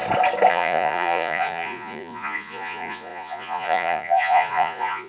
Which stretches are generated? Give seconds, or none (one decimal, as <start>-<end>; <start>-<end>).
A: 0.5-5.1